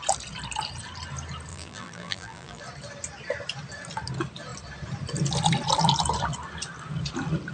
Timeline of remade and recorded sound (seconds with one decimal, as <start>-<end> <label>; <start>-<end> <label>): 0.0-1.5 recorded; 1.5-2.6 remade; 2.6-7.5 recorded